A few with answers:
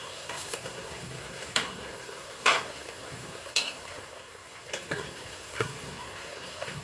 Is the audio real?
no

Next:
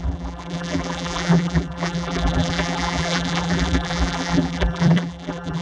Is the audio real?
no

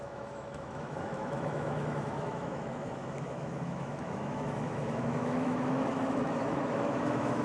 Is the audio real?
no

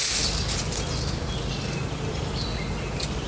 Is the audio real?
yes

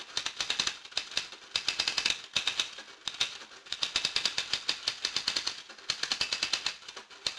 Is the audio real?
yes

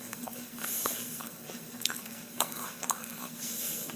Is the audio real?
no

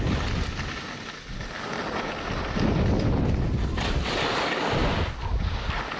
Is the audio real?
yes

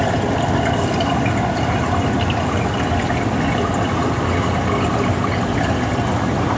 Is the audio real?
yes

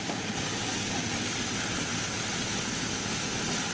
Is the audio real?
yes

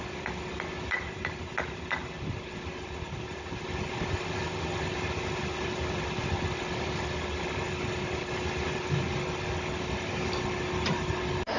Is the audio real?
yes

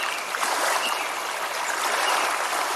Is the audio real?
yes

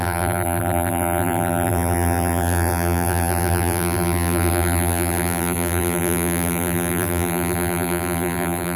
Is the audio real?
no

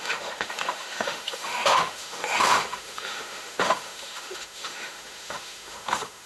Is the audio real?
no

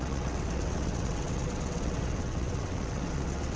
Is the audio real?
no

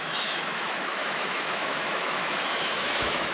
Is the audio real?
no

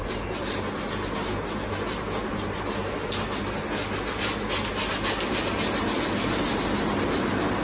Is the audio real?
yes